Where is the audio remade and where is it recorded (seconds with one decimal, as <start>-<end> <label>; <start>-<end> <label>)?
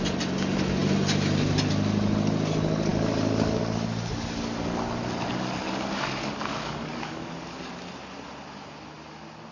0.0-5.3 recorded; 5.3-7.7 remade; 7.7-9.5 recorded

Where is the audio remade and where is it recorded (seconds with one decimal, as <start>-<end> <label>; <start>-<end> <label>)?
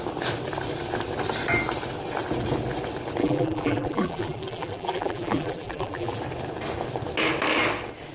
0.0-3.2 recorded; 3.2-6.2 remade; 6.2-8.1 recorded